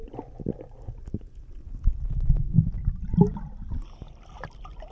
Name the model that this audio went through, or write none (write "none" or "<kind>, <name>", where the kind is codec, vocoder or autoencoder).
none